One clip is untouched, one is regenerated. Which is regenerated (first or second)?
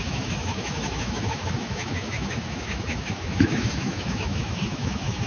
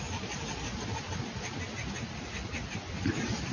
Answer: first